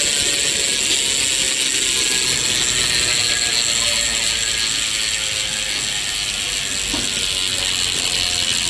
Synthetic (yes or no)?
no